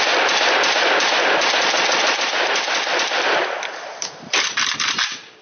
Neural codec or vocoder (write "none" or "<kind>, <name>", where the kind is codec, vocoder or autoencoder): none